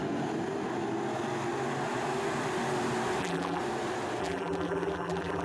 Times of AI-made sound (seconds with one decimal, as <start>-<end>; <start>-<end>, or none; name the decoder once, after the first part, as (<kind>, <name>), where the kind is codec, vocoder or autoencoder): 3.2-3.6 (vocoder, BigVGAN v2); 4.2-5.4